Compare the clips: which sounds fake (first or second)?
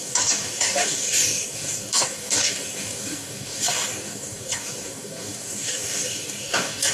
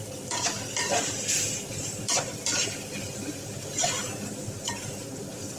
first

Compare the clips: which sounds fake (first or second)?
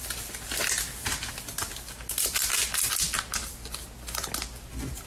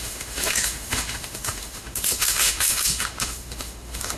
second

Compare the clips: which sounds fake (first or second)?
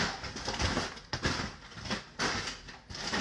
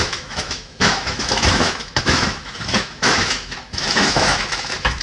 second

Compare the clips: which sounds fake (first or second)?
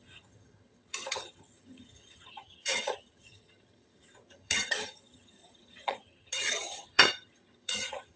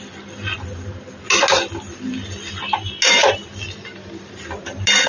first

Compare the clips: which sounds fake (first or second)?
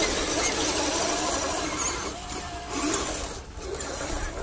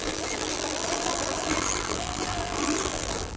second